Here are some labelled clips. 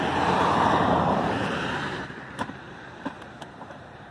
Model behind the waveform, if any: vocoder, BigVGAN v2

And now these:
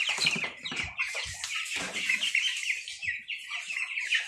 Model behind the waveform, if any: vocoder, BigVGAN v2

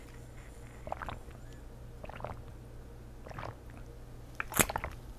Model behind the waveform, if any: none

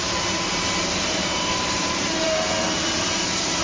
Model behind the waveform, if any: vocoder, BigVGAN v2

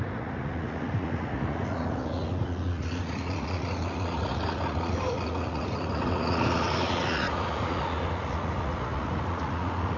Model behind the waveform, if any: vocoder, Vocos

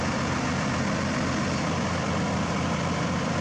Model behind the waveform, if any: none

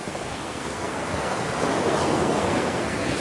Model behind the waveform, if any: codec, SNAC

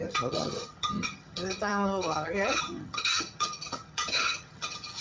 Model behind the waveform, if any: vocoder, HiFi-GAN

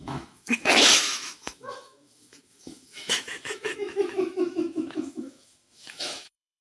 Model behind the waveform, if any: autoencoder, DAC-VAE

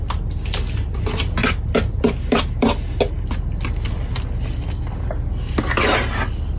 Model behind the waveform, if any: none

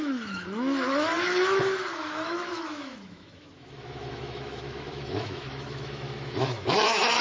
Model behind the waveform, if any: autoencoder, DAC-VAE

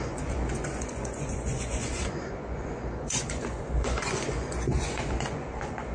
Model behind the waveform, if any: vocoder, Vocos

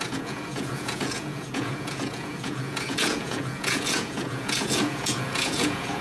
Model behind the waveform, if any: vocoder, Vocos